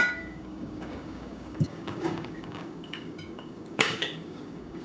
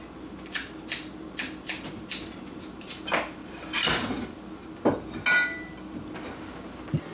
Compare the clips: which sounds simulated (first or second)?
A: first